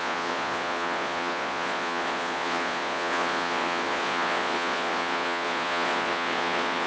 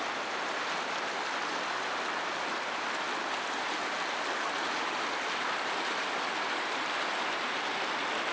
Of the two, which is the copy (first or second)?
first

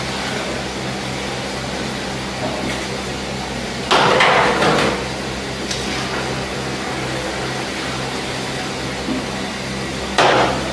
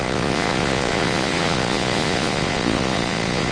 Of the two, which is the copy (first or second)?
second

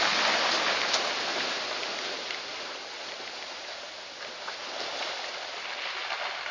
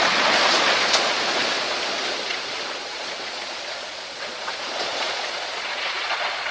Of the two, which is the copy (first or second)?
second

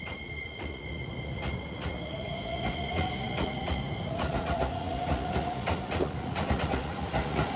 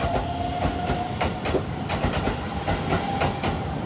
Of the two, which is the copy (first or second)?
first